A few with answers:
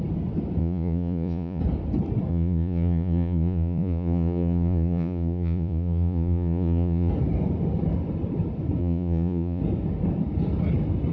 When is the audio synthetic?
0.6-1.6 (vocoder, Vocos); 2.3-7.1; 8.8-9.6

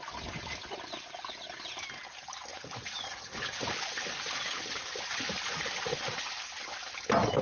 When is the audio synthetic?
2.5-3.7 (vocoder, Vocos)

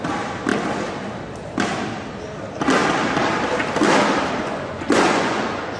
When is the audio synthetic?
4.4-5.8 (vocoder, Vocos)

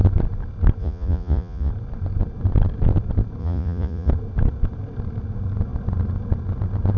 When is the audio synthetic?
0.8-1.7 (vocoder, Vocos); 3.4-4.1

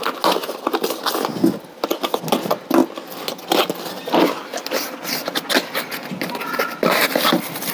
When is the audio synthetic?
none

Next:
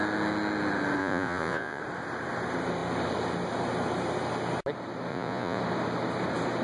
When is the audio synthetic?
1.0-1.8 (vocoder, Vocos); 5.1-5.6

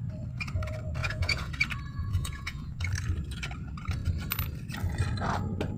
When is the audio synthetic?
1.0-1.5 (vocoder, Vocos); 1.9-2.8